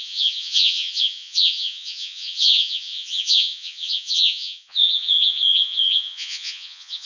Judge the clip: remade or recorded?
remade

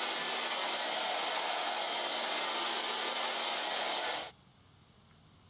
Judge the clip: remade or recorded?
recorded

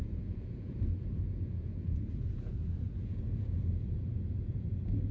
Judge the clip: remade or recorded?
remade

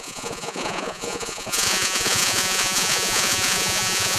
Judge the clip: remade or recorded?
remade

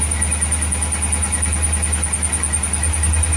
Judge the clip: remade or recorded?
recorded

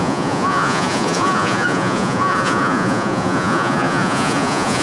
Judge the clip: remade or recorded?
remade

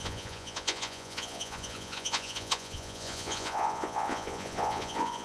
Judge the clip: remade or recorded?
remade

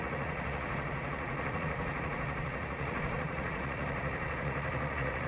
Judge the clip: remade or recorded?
remade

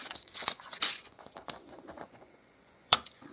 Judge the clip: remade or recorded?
remade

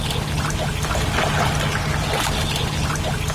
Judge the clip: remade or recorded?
recorded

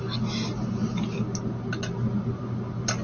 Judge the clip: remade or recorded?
recorded